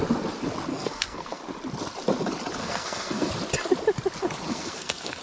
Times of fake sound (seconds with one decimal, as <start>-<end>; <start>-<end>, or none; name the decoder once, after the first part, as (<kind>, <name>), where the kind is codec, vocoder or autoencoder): 0.7-1.4 (codec, SNAC); 2.6-3.3; 4.5-5.2